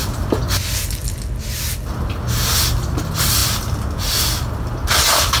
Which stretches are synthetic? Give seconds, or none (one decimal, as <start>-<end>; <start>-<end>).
none